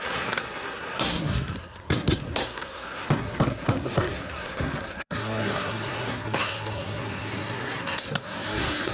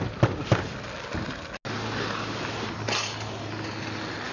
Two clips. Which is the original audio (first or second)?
second